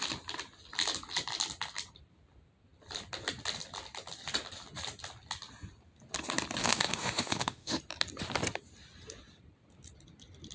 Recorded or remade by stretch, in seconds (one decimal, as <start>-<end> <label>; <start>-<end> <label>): 0.0-6.6 recorded; 6.6-7.8 remade; 7.8-10.5 recorded